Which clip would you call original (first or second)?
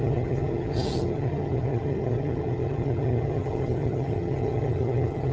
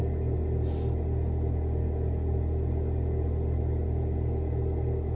second